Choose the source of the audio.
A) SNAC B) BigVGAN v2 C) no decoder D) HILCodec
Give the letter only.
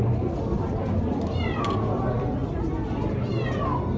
C